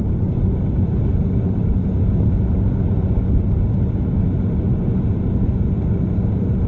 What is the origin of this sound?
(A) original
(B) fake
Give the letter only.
A